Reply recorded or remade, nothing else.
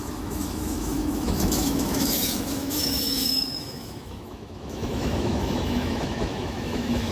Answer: remade